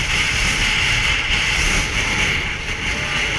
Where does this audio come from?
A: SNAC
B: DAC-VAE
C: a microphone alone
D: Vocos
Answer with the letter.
C